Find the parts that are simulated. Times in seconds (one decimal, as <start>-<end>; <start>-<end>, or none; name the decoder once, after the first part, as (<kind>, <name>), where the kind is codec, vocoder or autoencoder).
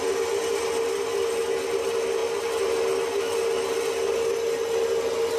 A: none